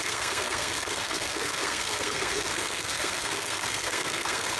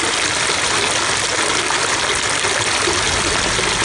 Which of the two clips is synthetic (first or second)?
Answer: first